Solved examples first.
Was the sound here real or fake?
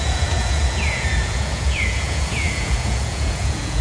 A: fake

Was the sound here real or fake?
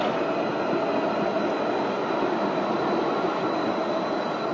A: real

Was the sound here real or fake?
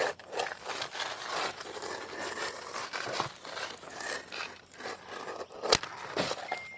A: real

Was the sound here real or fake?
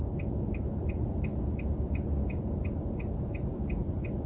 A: fake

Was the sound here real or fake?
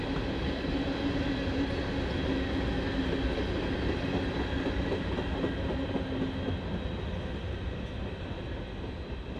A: real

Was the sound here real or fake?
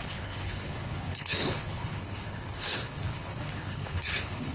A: fake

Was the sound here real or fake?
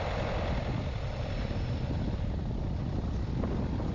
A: real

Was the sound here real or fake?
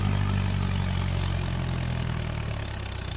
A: real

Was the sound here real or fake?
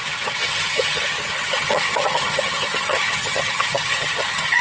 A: fake